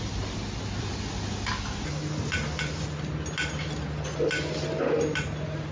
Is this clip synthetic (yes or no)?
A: no